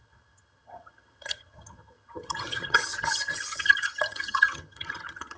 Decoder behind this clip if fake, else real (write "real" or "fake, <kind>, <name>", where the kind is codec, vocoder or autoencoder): fake, vocoder, HiFi-GAN